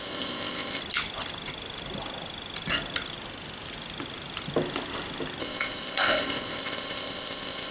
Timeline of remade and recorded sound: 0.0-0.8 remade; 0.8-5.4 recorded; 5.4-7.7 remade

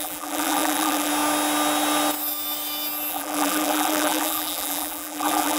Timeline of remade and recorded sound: 0.0-1.1 remade; 1.1-3.1 recorded; 3.1-5.6 remade

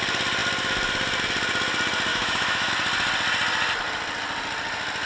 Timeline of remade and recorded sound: 0.0-2.1 recorded; 2.1-2.7 remade; 2.7-5.1 recorded

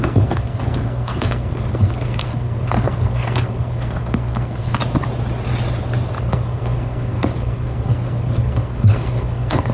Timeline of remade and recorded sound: 0.0-4.8 remade; 4.8-6.2 recorded; 6.2-9.7 remade